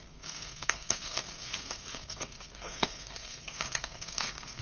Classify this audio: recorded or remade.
remade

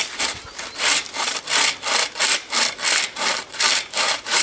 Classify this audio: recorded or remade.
recorded